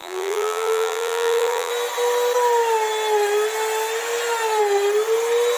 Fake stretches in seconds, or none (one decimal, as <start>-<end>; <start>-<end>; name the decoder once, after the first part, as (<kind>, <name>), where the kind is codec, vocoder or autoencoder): 0.0-1.7 (vocoder, BigVGAN v2)